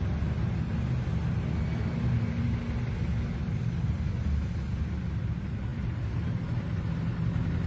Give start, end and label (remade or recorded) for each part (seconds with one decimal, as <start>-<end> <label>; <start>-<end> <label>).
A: 0.0-7.7 recorded